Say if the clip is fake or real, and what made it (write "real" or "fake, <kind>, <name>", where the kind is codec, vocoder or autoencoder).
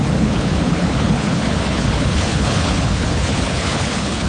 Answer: fake, codec, HILCodec